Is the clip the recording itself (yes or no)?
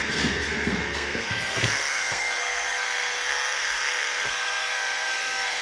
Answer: no